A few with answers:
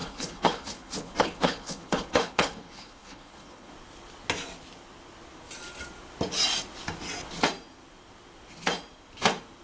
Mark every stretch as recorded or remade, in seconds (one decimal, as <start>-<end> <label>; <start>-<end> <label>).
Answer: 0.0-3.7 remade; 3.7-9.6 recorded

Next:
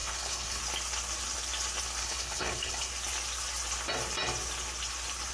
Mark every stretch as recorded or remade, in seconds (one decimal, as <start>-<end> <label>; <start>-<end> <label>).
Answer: 0.0-0.6 remade; 0.6-2.0 recorded; 2.0-2.9 remade; 2.9-5.3 recorded

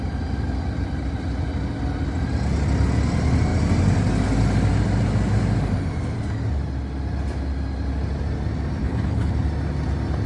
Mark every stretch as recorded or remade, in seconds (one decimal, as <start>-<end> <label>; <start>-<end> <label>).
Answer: 0.0-8.8 recorded; 8.8-9.3 remade; 9.3-10.3 recorded

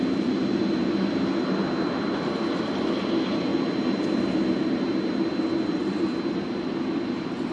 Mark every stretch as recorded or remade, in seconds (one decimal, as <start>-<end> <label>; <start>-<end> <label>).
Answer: 0.0-7.5 recorded

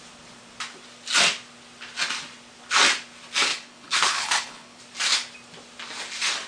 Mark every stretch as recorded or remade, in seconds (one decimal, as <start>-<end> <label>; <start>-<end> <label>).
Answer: 0.0-3.5 recorded; 3.5-4.8 remade; 4.8-6.5 recorded